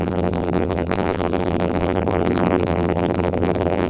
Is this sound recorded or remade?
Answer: remade